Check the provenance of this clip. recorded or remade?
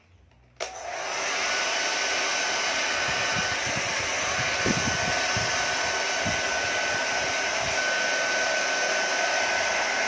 recorded